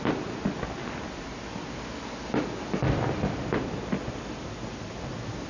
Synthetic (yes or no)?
no